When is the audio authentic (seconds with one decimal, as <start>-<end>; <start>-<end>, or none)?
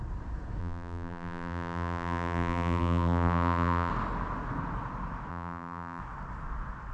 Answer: 0.0-0.6; 3.9-5.3; 6.0-6.9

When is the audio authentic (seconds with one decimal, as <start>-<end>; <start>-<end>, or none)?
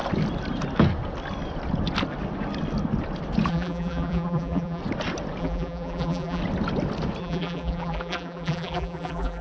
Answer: 0.0-3.5; 4.8-5.4; 6.4-7.2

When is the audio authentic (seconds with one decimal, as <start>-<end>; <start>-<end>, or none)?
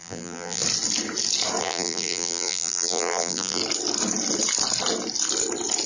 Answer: 0.6-1.6; 3.6-5.9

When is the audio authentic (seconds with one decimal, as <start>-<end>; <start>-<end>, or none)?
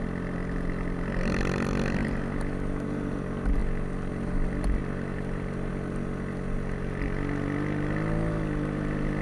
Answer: 0.0-9.2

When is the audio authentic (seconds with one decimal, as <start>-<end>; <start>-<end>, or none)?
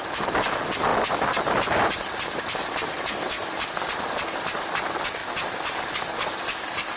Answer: 0.0-7.0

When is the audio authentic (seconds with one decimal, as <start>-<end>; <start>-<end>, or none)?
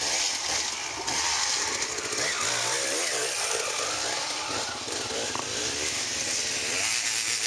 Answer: 0.0-7.5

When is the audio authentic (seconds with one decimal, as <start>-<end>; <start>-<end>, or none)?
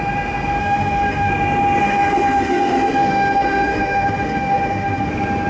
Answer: 0.0-0.6; 1.3-1.8; 5.1-5.5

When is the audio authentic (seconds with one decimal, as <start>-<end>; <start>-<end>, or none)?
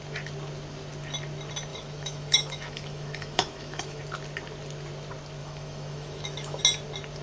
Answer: 0.0-1.7; 4.0-5.4; 6.6-7.2